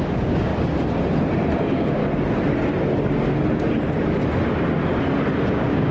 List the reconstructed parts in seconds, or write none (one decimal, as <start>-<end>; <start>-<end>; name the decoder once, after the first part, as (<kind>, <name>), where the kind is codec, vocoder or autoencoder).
0.0-0.5 (codec, DAC); 1.6-2.0; 5.5-5.9